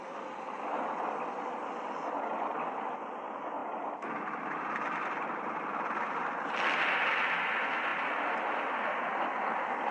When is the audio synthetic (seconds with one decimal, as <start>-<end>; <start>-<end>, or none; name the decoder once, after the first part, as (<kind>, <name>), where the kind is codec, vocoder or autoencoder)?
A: none